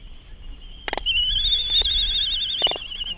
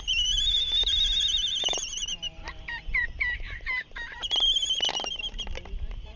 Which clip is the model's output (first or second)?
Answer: second